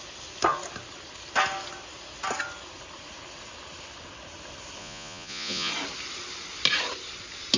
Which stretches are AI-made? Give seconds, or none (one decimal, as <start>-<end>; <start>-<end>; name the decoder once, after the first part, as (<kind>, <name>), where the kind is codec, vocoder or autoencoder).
4.8-5.7 (vocoder, Vocos)